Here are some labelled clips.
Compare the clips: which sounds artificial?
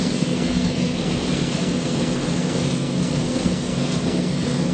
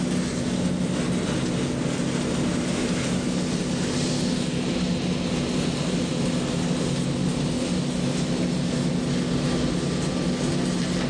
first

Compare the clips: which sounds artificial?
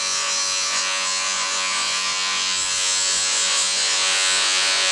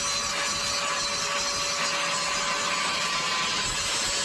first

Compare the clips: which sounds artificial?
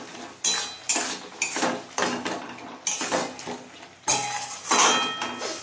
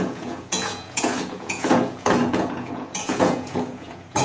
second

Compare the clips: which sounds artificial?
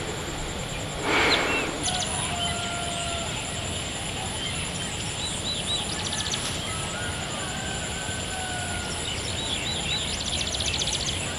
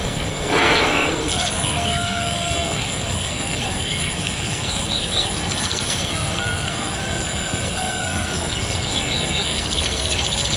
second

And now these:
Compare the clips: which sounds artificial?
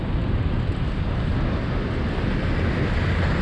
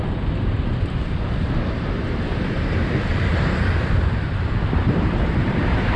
second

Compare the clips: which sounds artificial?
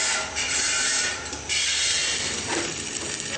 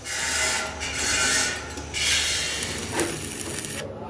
first